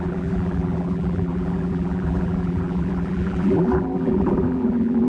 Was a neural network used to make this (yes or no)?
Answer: yes